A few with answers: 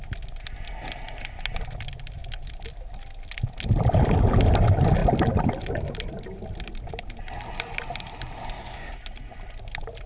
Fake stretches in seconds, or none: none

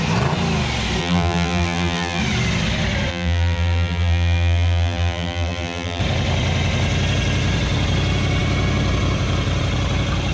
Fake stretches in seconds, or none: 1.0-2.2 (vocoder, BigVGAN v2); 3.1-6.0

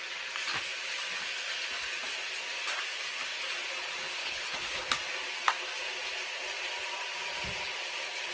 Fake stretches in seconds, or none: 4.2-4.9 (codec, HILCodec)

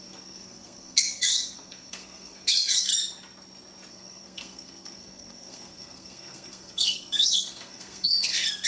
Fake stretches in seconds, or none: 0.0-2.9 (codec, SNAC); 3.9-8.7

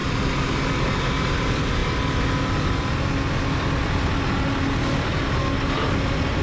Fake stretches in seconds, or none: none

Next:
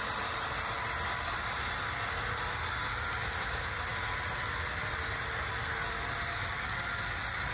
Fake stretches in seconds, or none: none

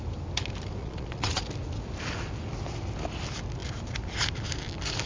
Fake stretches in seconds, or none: 0.8-1.4 (vocoder, Vocos)

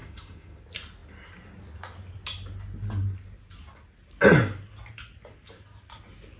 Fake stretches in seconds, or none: 0.0-0.6 (autoencoder, DAC-VAE)